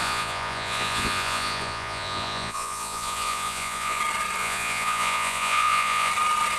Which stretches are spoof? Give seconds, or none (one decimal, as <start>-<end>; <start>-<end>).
0.0-4.0; 4.4-6.1